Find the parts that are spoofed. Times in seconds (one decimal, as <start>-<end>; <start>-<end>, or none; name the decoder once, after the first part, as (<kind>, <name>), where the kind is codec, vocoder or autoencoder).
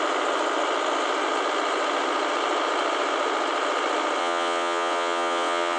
4.2-5.8 (vocoder, WaveNeXt)